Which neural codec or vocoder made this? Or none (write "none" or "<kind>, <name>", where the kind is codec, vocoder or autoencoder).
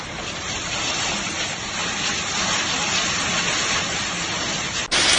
none